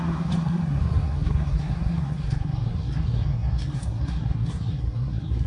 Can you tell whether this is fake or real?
fake